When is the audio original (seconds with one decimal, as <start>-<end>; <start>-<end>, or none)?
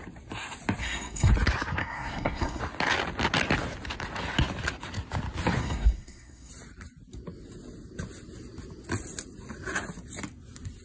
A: 0.0-0.8; 1.3-1.8; 2.6-5.6; 6.5-10.8